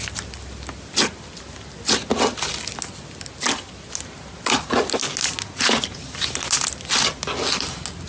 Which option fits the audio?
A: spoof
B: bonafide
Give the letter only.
B